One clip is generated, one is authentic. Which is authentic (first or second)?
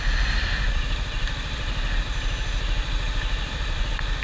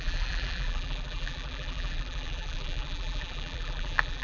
first